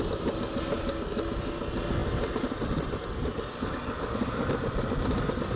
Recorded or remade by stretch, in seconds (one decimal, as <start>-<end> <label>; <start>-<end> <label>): 0.0-5.6 recorded